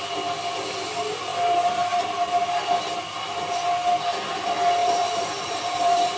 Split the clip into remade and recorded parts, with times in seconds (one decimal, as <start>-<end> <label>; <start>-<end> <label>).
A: 0.0-4.8 recorded; 4.8-6.2 remade